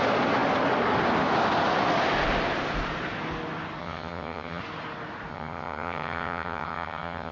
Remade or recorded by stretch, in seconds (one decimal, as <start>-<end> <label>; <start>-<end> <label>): 0.0-3.8 recorded; 3.8-4.6 remade; 4.6-5.3 recorded; 5.3-7.3 remade